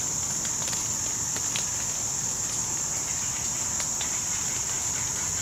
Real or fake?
real